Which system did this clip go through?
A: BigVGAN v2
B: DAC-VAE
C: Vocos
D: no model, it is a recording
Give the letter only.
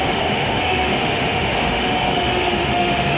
B